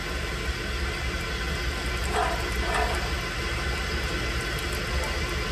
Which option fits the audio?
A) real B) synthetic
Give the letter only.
A